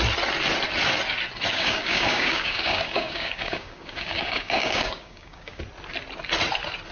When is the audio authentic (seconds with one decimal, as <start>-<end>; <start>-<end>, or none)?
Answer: 0.0-1.5; 5.6-6.9